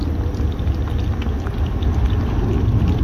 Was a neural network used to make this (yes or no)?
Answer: no